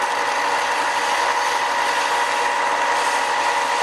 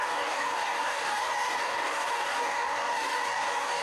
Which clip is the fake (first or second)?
second